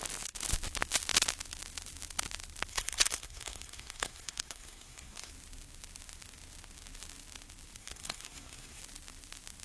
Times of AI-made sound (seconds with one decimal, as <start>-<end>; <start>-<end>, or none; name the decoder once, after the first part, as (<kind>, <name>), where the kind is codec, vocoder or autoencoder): 2.7-5.3 (codec, SNAC); 7.8-8.8